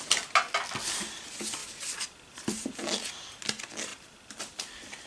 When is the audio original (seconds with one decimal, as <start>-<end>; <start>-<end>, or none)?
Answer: 0.0-1.6; 3.3-3.9